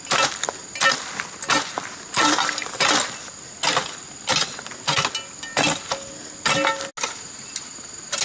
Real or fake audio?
real